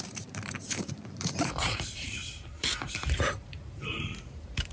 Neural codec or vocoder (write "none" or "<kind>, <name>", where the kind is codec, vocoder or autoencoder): vocoder, BigVGAN v2